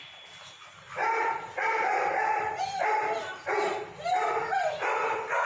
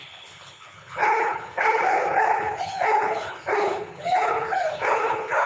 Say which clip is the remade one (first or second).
second